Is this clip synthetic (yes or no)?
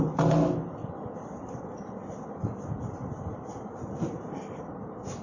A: no